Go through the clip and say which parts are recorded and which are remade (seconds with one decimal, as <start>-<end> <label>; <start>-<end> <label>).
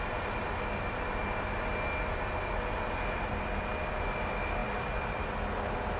0.0-4.6 recorded; 4.6-5.2 remade; 5.2-6.0 recorded